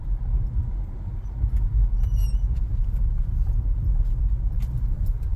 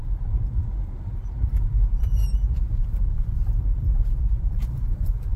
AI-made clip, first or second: second